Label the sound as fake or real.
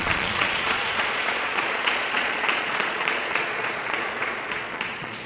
fake